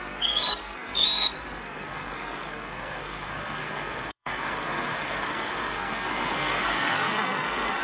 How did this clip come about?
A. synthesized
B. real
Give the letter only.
A